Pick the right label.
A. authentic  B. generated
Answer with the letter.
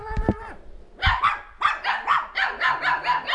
A